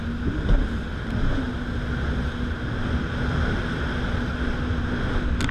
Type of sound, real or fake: real